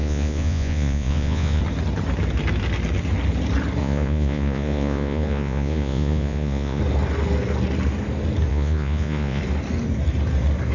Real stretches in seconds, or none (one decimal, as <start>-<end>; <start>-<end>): 1.6-3.8; 6.8-8.5; 9.4-10.7